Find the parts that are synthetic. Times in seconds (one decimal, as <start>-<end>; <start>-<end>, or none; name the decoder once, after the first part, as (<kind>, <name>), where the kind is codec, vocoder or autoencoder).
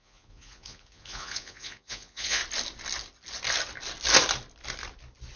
0.0-2.4 (vocoder, Vocos)